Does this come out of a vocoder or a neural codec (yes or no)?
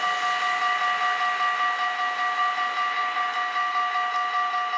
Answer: no